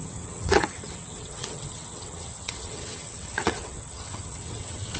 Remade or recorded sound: remade